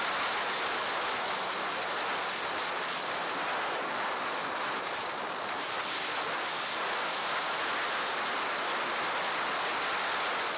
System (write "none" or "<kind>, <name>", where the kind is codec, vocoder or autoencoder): none